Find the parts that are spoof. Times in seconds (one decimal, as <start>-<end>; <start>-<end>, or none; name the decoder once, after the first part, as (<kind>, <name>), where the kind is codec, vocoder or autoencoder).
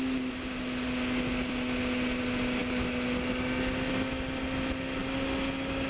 none